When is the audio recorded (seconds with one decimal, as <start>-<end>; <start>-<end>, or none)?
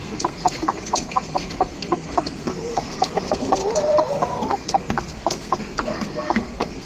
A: 3.6-4.1